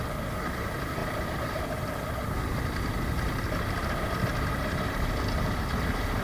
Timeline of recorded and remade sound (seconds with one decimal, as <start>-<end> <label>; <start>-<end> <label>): 0.0-6.2 recorded